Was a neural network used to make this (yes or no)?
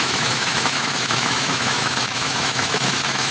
yes